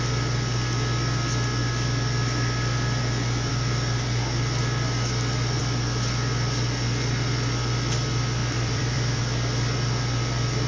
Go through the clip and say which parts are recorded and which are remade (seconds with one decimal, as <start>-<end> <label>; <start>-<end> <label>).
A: 0.0-8.4 recorded; 8.4-9.2 remade; 9.2-10.7 recorded